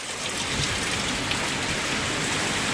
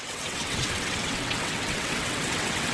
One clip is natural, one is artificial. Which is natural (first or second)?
first